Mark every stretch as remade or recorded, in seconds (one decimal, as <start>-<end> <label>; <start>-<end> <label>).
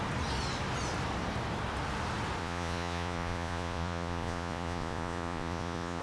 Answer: 0.0-2.4 recorded; 2.4-6.0 remade